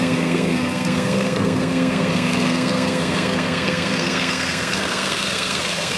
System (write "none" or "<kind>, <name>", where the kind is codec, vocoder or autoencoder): codec, SNAC